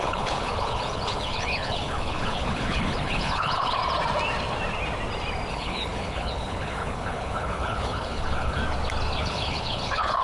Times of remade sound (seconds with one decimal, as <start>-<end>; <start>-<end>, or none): 0.0-3.8; 5.5-8.6; 9.2-10.2